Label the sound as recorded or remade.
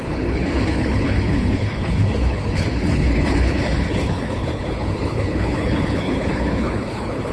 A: remade